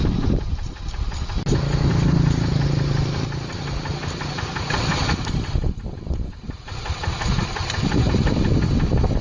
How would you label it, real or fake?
real